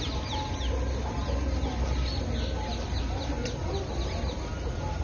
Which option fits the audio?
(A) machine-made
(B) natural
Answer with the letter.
B